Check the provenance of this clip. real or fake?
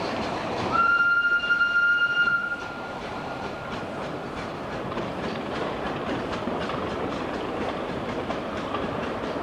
fake